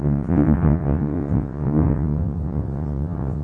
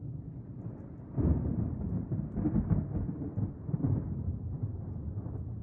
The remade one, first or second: first